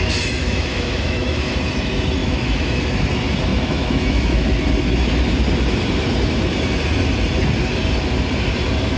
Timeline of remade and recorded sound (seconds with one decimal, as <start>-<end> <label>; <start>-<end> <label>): 0.0-0.4 recorded; 0.4-1.5 remade; 1.5-2.2 recorded; 2.2-2.8 remade; 2.8-3.5 recorded; 3.5-4.4 remade; 4.4-9.0 recorded